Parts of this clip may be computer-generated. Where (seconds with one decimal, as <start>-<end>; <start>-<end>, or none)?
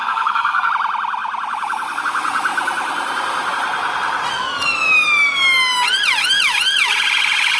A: 0.0-0.7